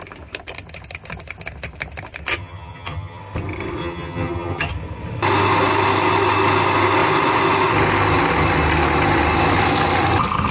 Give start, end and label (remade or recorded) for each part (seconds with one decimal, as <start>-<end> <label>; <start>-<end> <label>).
0.0-2.3 recorded; 2.3-3.2 remade; 3.2-3.8 recorded; 3.8-4.7 remade; 4.7-10.5 recorded